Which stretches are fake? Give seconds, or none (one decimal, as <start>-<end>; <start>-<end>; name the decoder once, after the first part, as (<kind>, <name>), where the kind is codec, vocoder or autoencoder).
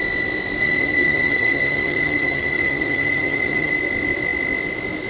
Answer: 0.6-3.7 (vocoder, HiFi-GAN)